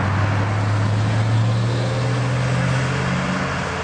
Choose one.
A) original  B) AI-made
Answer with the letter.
A